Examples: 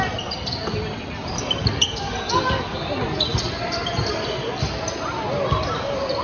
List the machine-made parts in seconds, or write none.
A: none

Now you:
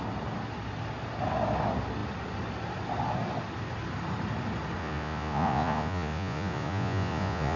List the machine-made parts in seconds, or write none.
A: 4.8-7.6 (vocoder, Vocos)

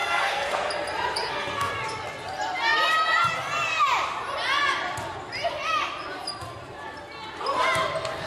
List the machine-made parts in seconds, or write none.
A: 0.0-0.7 (codec, SNAC); 1.2-1.7